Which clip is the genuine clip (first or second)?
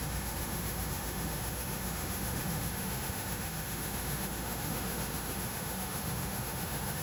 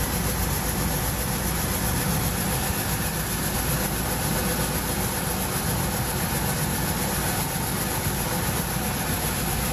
second